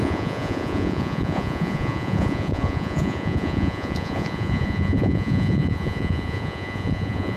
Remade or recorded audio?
remade